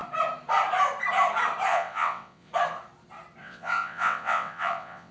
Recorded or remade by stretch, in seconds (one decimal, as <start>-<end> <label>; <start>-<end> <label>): 0.0-1.7 recorded; 1.7-2.5 remade; 2.5-3.4 recorded; 3.4-5.1 remade